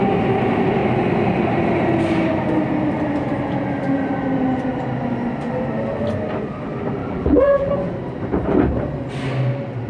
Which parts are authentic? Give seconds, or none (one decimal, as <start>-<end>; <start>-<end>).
0.0-7.0; 7.7-9.9